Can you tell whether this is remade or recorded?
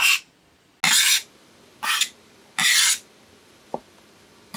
recorded